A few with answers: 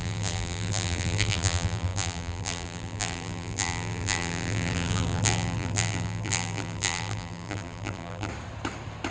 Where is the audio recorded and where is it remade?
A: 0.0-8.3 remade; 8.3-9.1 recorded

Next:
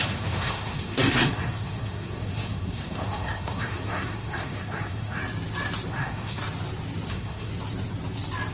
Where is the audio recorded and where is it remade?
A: 0.0-5.2 remade; 5.2-5.9 recorded; 5.9-6.4 remade; 6.4-7.1 recorded; 7.1-7.5 remade; 7.5-8.5 recorded

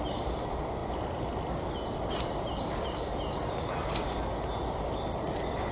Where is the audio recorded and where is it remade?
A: 0.0-5.7 recorded

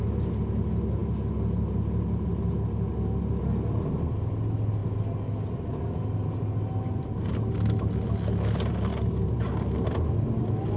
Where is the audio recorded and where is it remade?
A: 0.0-10.8 recorded